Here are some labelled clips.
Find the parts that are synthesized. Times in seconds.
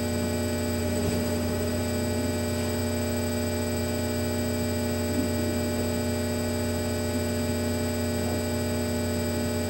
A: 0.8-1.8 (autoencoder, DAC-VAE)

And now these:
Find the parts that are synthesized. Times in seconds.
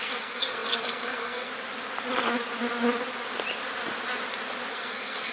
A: 0.0-1.5 (codec, SNAC); 4.7-5.3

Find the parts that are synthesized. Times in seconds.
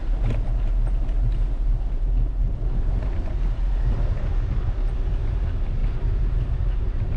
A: 5.8-6.5 (vocoder, BigVGAN v2)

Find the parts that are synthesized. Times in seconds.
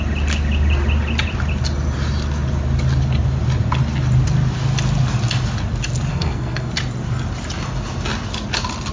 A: 6.1-6.7 (codec, SNAC)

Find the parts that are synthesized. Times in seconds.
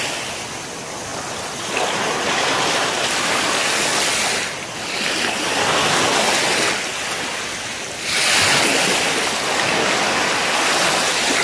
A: 1.1-3.6 (vocoder, BigVGAN v2); 6.9-7.6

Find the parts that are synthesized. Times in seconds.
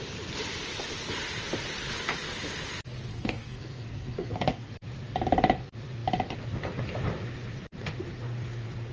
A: 3.1-4.7 (codec, SNAC)